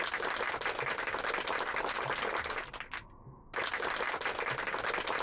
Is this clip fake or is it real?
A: real